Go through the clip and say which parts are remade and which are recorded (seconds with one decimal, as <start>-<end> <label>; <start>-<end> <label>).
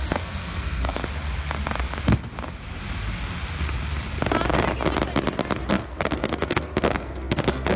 0.0-1.0 remade; 1.0-5.7 recorded; 5.7-7.8 remade